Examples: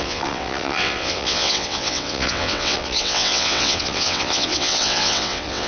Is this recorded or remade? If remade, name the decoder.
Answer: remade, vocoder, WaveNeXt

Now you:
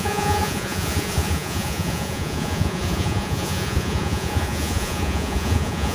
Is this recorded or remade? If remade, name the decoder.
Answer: remade, vocoder, Vocos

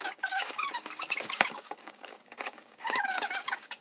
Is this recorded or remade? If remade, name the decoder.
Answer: remade, codec, DAC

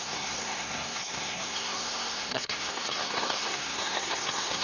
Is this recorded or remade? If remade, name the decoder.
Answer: remade, codec, SNAC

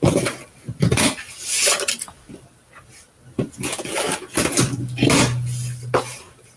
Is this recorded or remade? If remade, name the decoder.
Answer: recorded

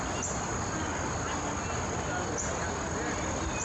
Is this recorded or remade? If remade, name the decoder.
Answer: recorded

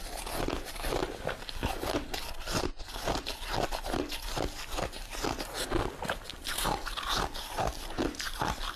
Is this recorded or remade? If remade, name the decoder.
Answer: recorded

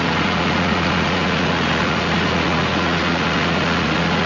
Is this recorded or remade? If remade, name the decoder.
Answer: remade, vocoder, Vocos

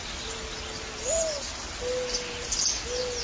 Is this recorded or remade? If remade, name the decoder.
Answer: recorded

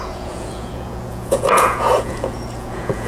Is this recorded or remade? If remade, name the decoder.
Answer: remade, vocoder, Vocos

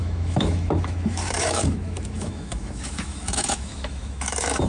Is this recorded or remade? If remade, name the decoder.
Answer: remade, autoencoder, DAC-VAE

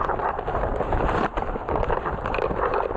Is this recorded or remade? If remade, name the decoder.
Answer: recorded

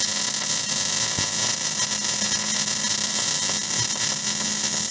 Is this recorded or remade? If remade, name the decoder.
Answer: recorded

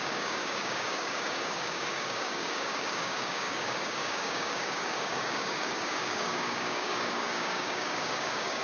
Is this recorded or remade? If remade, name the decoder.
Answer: remade, codec, DAC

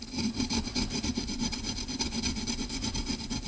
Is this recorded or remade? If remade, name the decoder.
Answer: remade, vocoder, Vocos